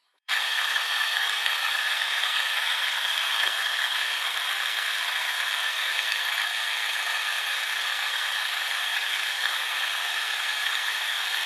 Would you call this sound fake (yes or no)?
yes